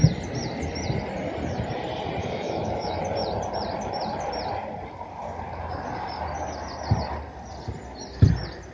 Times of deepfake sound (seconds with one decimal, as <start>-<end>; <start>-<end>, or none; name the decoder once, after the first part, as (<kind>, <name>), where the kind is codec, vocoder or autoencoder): 2.2-3.0 (autoencoder, DAC-VAE)